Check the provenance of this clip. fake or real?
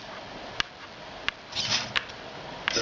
real